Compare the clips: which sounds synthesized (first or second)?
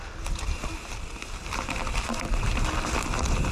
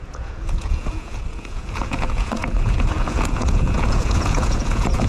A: second